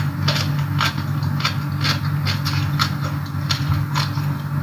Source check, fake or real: real